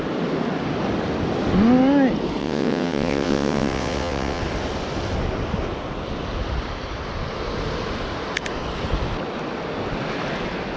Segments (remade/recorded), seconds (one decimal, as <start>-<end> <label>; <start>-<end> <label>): 0.0-2.4 recorded; 2.4-4.4 remade; 4.4-10.8 recorded